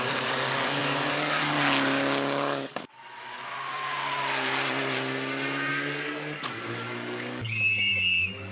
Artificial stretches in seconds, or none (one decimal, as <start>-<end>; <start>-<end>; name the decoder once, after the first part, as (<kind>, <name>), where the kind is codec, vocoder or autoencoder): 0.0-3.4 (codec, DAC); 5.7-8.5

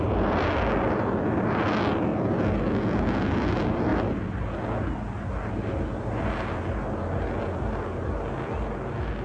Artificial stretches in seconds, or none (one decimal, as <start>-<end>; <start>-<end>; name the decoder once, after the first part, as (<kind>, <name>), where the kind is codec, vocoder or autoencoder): none

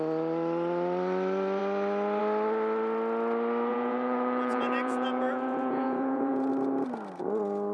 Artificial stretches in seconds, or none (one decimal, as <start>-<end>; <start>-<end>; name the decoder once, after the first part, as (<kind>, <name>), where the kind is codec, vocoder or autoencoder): 3.7-6.5 (vocoder, Vocos)

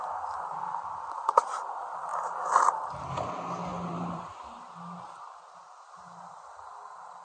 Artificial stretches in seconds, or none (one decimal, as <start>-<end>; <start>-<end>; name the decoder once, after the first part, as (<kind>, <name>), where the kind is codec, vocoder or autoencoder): 3.7-6.5 (vocoder, BigVGAN v2)

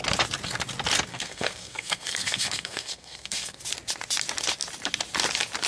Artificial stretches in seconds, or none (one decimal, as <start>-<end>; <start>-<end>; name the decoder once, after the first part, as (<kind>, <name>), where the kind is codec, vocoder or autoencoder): 1.1-3.6 (codec, SNAC)